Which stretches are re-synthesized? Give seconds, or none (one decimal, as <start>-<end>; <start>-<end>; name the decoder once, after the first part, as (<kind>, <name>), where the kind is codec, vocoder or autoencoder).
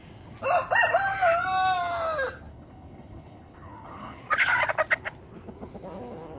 2.5-4.2 (codec, HILCodec)